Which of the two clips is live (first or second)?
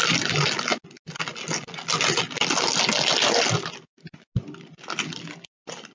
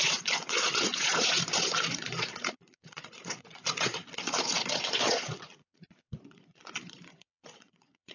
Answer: first